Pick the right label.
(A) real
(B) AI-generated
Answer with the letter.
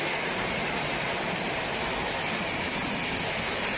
A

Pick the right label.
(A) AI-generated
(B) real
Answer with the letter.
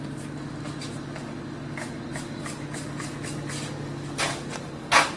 B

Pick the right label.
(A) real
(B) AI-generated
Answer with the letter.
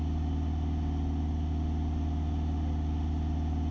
A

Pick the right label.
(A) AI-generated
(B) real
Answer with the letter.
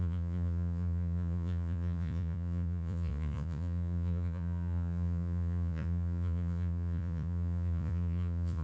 A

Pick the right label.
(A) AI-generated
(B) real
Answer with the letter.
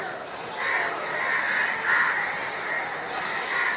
B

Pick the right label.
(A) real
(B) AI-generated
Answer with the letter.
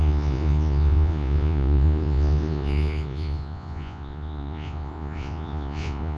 B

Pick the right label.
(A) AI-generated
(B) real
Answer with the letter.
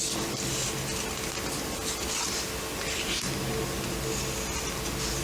B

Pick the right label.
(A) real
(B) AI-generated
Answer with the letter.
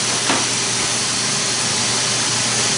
A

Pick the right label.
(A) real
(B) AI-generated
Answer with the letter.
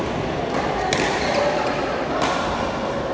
A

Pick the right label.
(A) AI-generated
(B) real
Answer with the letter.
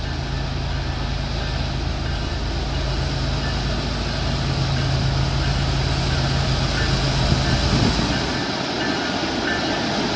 B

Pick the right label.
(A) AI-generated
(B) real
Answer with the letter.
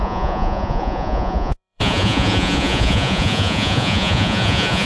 A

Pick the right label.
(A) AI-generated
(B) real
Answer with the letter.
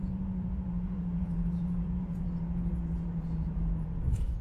A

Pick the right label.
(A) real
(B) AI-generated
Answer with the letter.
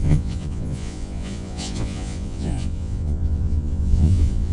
B